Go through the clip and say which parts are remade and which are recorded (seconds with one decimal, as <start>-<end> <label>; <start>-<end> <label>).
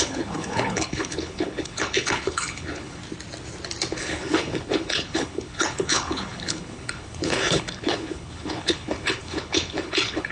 0.0-3.0 remade; 3.0-3.9 recorded; 3.9-10.3 remade